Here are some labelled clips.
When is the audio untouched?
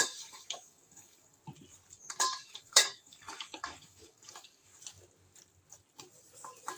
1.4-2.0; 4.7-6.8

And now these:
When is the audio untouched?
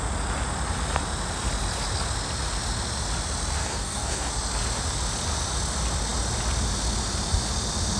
0.0-3.6; 4.3-8.0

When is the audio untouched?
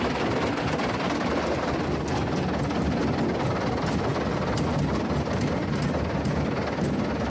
0.0-7.3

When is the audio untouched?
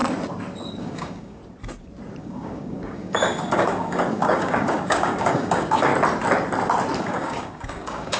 0.0-0.8; 1.4-2.2; 5.9-7.0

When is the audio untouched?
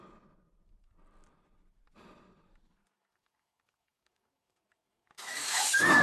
0.0-3.1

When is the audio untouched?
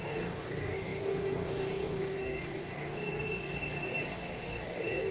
none